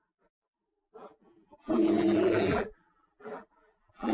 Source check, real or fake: fake